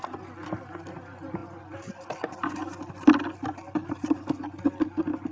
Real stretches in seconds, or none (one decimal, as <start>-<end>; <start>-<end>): 0.0-5.3